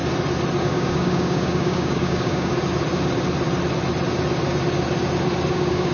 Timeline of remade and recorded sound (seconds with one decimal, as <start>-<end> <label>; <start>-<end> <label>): 0.0-0.6 recorded; 0.6-2.5 remade; 2.5-5.5 recorded; 5.5-5.9 remade